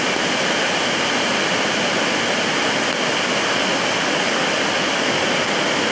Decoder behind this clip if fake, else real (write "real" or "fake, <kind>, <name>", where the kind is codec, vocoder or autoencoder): real